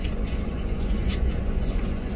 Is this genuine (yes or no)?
no